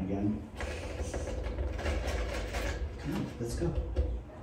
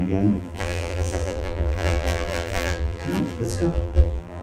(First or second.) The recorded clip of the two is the first